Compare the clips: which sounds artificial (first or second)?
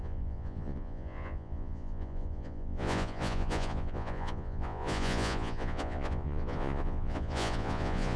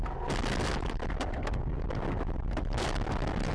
first